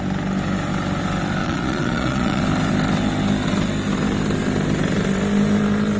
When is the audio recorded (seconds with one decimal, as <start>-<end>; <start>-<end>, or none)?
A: 0.0-1.4; 2.4-6.0